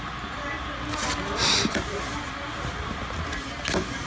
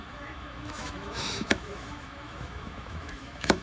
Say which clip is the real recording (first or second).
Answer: first